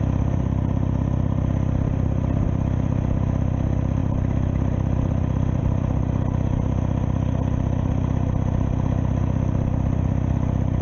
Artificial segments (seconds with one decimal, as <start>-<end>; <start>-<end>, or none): none